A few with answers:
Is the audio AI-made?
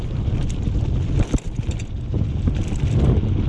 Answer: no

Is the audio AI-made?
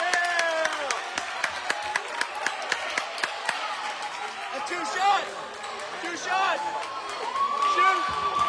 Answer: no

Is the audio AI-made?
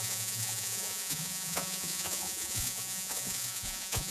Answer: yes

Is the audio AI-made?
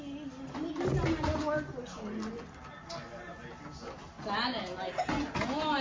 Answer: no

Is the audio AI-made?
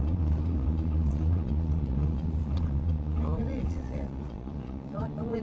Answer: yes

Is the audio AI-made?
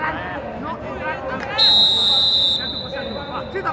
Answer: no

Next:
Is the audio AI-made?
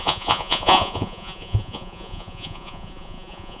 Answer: yes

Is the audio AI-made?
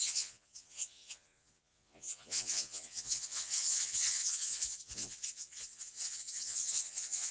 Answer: yes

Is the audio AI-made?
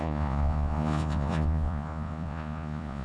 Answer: yes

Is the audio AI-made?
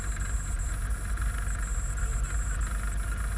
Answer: no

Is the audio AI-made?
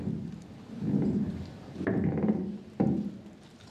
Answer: no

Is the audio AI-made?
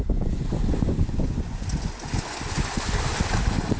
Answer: yes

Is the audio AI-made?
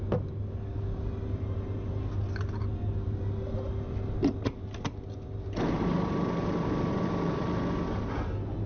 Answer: no